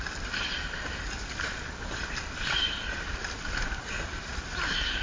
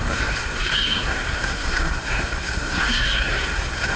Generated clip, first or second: second